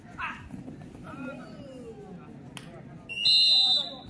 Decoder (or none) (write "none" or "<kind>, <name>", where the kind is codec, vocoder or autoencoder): none